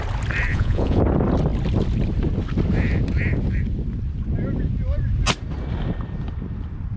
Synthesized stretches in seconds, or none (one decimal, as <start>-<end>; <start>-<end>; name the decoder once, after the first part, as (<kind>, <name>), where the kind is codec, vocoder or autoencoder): 0.5-1.0 (vocoder, Vocos)

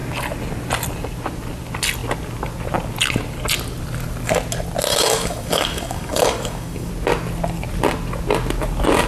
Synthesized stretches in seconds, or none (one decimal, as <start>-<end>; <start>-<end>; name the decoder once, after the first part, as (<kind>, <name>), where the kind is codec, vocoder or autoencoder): 4.9-6.9 (codec, DAC)